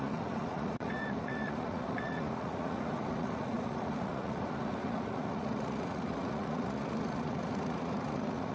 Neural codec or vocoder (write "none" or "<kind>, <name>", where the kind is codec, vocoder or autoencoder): vocoder, Vocos